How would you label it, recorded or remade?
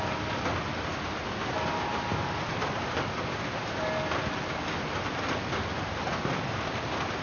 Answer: recorded